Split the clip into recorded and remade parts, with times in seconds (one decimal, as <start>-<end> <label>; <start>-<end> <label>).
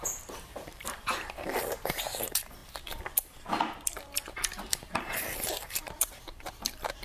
0.0-2.6 remade; 2.6-4.3 recorded; 4.3-7.0 remade